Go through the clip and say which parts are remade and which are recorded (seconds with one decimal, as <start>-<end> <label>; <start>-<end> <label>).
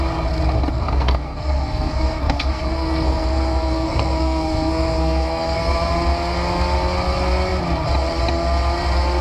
0.0-0.7 recorded; 0.7-5.9 remade; 5.9-9.2 recorded